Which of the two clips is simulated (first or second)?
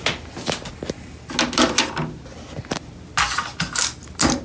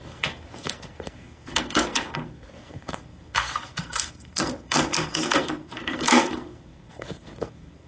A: second